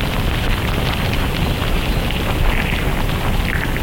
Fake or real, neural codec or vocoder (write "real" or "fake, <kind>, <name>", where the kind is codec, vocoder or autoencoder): real